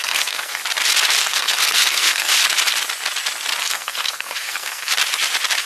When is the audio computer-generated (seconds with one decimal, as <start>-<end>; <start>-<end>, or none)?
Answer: 0.0-0.6; 1.2-2.3; 3.6-4.9